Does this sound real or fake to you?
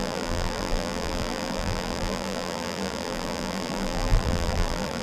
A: fake